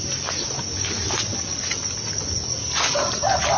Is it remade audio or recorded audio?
recorded